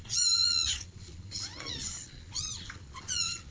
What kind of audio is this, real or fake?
fake